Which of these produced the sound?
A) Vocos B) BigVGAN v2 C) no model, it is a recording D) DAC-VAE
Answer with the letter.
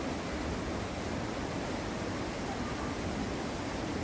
C